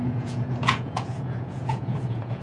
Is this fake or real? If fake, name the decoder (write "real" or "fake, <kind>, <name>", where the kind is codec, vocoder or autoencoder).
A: fake, vocoder, Vocos